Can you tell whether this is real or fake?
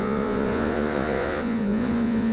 fake